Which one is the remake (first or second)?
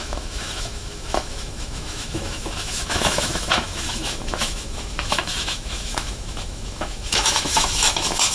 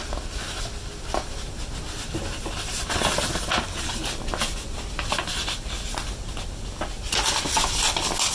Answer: first